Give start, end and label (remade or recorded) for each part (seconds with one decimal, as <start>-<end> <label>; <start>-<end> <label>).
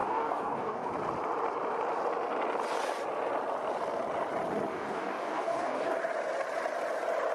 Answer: 0.0-0.9 remade; 0.9-4.7 recorded; 4.7-6.0 remade; 6.0-7.3 recorded